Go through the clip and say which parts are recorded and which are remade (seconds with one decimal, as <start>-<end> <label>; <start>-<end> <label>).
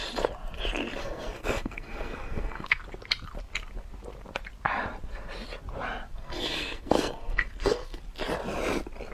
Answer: 0.0-1.0 recorded; 1.0-2.8 remade; 2.8-6.2 recorded; 6.2-8.0 remade; 8.0-9.1 recorded